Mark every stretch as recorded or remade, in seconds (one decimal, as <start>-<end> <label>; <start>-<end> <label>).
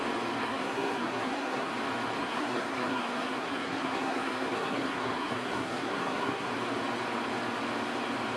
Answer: 0.0-0.4 recorded; 0.4-1.7 remade; 1.7-2.2 recorded; 2.2-6.5 remade; 6.5-8.4 recorded